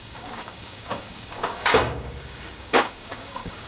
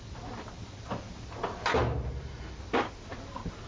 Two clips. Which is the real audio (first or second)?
second